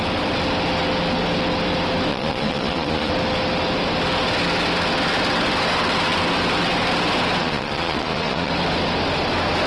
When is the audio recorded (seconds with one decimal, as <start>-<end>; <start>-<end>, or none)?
0.0-2.1; 3.1-7.4; 8.5-9.7